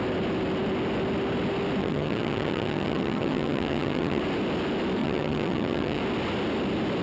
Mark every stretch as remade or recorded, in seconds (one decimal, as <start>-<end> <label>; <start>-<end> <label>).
0.0-1.8 recorded; 1.8-4.2 remade; 4.2-5.0 recorded; 5.0-6.0 remade; 6.0-7.0 recorded